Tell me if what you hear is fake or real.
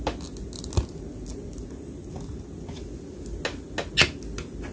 real